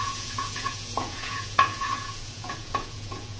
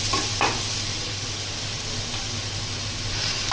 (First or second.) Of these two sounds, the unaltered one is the second